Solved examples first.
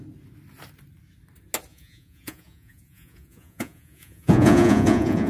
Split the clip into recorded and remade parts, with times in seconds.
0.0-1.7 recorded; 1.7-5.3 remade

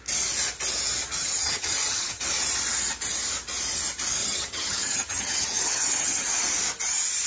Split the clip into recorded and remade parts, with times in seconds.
0.0-1.2 recorded; 1.2-2.2 remade; 2.2-4.2 recorded; 4.2-6.3 remade; 6.3-7.3 recorded

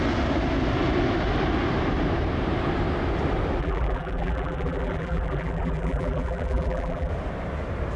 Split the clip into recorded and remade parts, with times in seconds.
0.0-3.6 recorded; 3.6-7.1 remade; 7.1-8.0 recorded

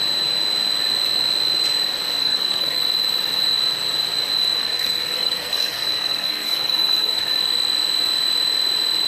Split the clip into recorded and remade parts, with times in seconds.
0.0-2.2 recorded; 2.2-2.8 remade; 2.8-4.6 recorded; 4.6-7.3 remade; 7.3-9.1 recorded

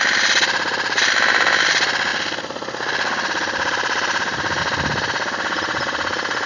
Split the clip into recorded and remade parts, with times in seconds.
0.0-6.5 recorded

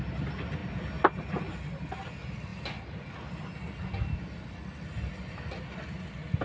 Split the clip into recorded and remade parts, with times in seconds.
0.0-6.4 recorded